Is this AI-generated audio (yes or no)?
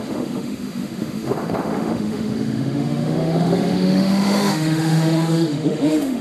yes